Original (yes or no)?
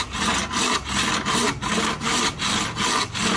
yes